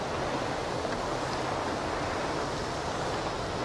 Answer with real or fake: real